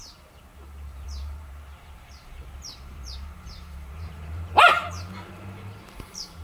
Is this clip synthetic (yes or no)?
yes